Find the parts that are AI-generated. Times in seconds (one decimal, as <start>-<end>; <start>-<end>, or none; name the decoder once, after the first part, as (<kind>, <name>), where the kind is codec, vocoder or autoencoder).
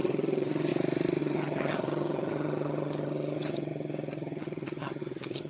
0.0-0.7 (vocoder, HiFi-GAN); 1.2-5.5